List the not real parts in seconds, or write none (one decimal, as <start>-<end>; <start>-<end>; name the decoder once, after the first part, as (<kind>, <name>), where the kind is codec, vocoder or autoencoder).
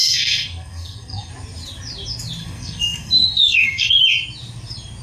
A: 0.0-1.3 (codec, SNAC); 2.4-4.0